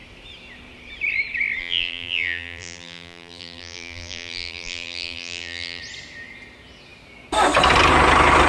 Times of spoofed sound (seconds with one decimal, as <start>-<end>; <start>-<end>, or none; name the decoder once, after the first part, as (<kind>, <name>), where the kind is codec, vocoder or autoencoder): 1.6-5.8 (vocoder, BigVGAN v2)